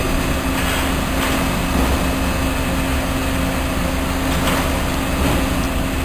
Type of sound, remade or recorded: recorded